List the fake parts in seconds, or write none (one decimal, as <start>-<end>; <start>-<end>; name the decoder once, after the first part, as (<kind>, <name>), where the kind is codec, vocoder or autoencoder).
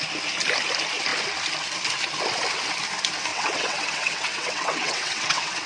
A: 3.3-5.7 (vocoder, WaveNeXt)